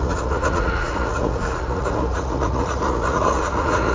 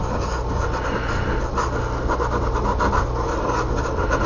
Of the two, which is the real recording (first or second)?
second